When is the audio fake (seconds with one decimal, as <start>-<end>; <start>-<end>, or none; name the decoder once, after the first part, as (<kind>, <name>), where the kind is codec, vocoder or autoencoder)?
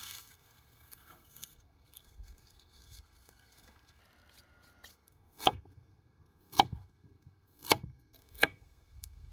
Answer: 0.0-4.0 (codec, SNAC); 4.9-9.3